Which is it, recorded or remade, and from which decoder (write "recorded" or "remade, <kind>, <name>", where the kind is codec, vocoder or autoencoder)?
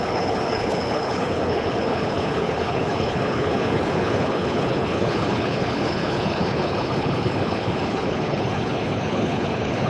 remade, codec, HILCodec